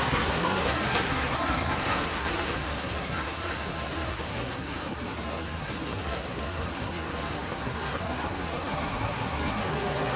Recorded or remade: remade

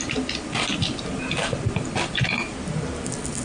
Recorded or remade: recorded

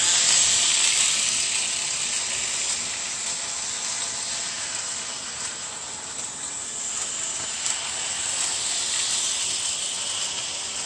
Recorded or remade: recorded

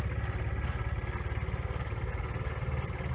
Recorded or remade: recorded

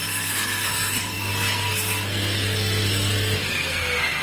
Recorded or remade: remade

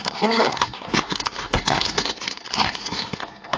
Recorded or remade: remade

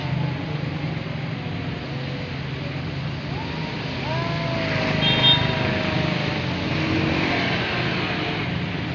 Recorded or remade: recorded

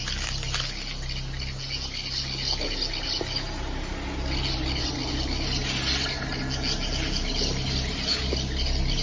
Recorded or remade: recorded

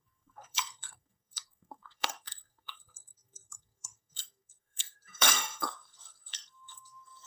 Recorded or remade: remade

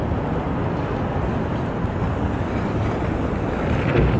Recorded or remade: recorded